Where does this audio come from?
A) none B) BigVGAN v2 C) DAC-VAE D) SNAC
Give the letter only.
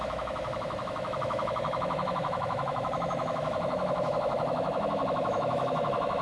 C